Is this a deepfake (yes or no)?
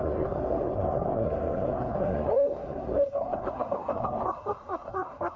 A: yes